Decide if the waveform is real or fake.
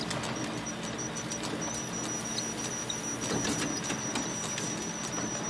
real